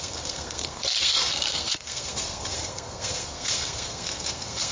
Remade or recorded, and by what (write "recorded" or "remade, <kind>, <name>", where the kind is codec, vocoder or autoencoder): remade, codec, SNAC